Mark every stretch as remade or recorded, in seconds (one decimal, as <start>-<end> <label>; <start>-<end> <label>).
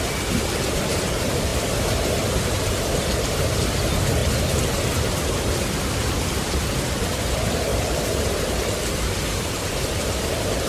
0.0-4.2 remade; 4.2-5.9 recorded; 5.9-7.7 remade; 7.7-8.4 recorded; 8.4-10.7 remade